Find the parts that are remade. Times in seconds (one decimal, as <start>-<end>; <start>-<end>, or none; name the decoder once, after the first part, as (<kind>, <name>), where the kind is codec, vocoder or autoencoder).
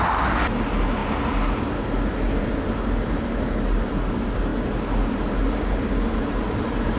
none